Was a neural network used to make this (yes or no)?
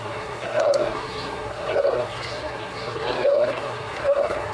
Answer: yes